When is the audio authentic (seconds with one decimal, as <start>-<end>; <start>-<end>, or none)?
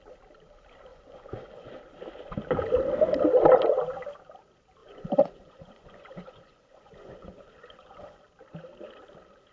0.0-0.9; 1.7-4.8; 8.2-9.5